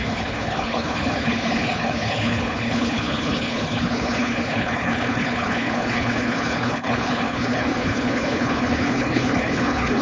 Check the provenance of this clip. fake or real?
fake